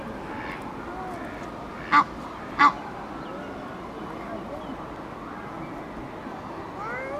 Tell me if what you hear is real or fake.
real